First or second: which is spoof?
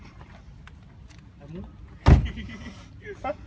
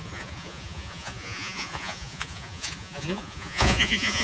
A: second